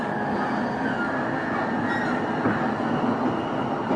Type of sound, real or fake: real